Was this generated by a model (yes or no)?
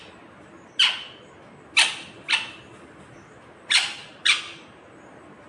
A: no